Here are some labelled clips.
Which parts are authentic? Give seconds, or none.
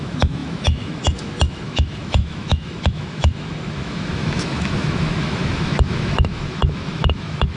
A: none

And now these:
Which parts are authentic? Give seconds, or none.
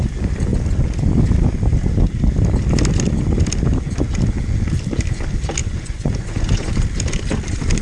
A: 0.0-5.6; 6.7-7.8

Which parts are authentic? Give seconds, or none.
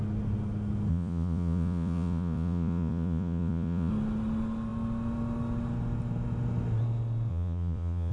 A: 0.0-0.9; 3.9-7.3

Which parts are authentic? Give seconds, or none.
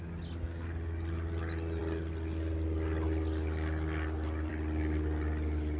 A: 0.0-5.8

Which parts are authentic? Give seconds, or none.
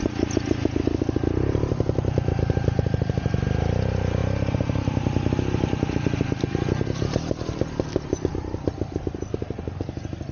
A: 0.0-10.3